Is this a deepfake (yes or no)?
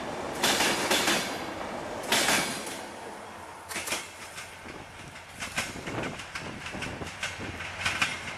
no